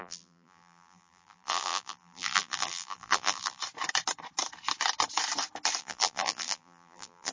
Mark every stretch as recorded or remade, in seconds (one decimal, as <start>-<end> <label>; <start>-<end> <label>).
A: 0.0-3.6 remade; 3.6-5.8 recorded; 5.8-7.3 remade